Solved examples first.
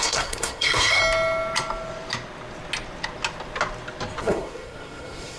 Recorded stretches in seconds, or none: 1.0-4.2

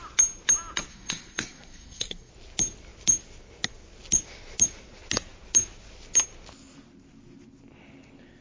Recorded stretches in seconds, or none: 0.0-0.9; 2.3-8.4

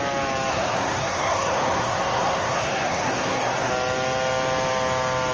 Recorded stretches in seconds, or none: 0.0-0.5; 3.7-5.3

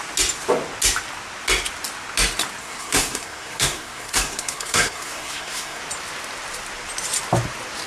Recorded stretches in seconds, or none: 0.0-2.6; 5.8-7.9

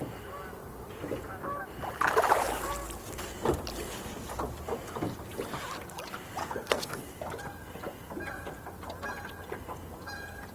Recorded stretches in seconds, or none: 0.0-6.4; 7.0-10.5

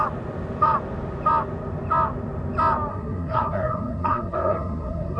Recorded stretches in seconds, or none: 0.0-2.9

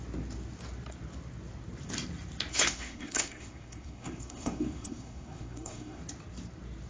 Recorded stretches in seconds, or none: 0.0-2.5; 6.0-6.9

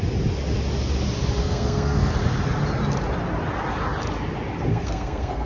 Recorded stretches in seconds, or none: 0.0-1.4; 2.1-4.7